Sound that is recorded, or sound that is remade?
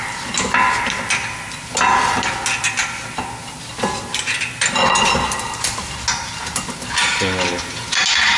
recorded